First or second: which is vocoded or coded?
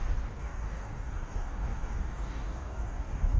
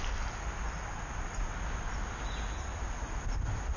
first